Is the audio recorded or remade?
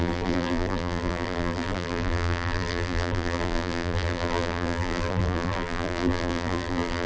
remade